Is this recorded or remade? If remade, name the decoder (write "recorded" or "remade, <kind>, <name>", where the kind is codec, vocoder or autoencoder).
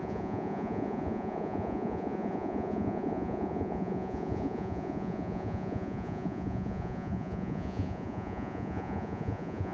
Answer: remade, vocoder, Vocos